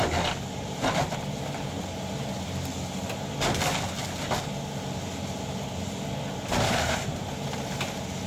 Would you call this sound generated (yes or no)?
no